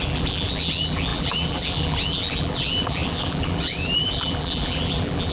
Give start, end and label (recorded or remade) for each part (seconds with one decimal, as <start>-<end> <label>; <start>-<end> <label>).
0.0-5.3 remade